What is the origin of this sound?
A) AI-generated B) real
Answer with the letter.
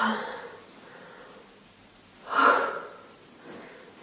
B